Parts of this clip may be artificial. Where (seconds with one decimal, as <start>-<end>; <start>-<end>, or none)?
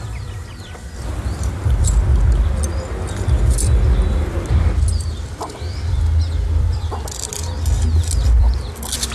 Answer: 0.0-2.1; 4.1-7.3; 8.4-9.1